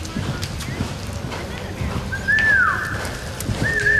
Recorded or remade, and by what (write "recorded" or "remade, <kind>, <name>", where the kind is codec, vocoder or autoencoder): recorded